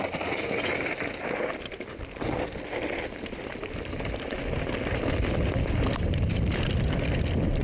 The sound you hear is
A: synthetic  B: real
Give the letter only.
A